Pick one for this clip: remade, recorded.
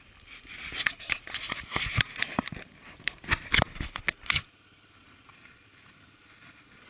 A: recorded